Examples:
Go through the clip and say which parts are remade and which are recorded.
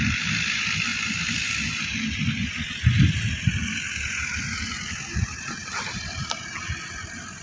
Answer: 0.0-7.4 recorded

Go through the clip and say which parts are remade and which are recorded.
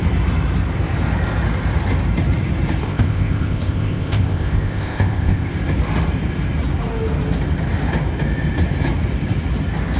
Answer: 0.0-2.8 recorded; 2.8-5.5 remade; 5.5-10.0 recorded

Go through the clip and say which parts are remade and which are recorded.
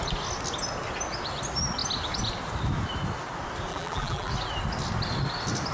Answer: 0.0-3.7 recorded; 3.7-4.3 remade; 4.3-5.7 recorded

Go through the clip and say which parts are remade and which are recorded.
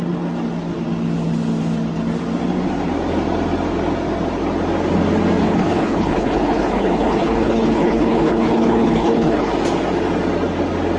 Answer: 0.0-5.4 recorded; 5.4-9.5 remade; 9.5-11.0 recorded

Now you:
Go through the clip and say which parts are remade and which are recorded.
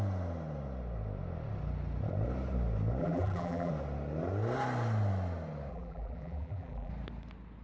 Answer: 0.0-3.0 recorded; 3.0-3.7 remade; 3.7-5.7 recorded; 5.7-6.9 remade; 6.9-7.6 recorded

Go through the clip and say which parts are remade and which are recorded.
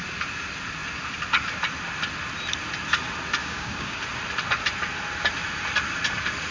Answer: 0.0-3.4 recorded; 3.4-4.0 remade; 4.0-6.5 recorded